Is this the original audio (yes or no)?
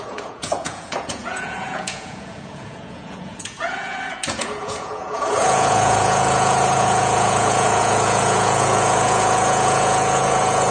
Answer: no